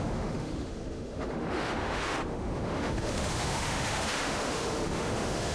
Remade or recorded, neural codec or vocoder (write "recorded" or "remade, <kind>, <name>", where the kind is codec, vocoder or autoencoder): remade, autoencoder, DAC-VAE